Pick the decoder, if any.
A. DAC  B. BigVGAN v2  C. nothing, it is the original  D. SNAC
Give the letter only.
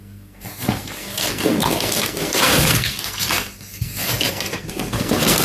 D